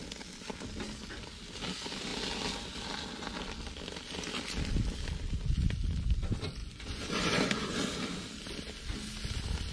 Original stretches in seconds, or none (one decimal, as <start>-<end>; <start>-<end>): 0.0-6.6; 7.7-9.7